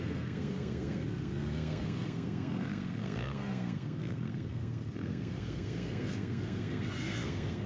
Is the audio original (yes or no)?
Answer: no